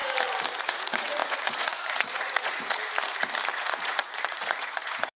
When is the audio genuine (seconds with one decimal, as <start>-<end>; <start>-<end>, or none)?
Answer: 0.0-0.6; 2.8-3.6